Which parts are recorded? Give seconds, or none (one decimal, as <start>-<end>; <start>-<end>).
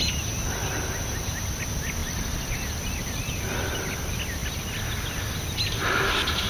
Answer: 0.0-2.0; 3.3-6.5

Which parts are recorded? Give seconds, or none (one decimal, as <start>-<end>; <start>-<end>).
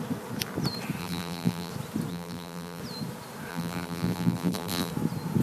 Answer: 0.0-1.0; 1.7-2.1; 2.8-3.5; 4.9-5.4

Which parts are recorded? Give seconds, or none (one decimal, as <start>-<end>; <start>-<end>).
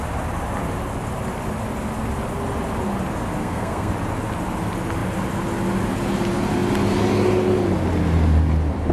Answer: 0.0-3.4; 3.9-8.9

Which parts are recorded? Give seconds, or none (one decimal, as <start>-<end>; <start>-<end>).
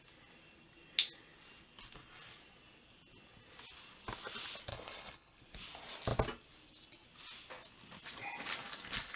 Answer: 0.0-4.7; 5.4-9.2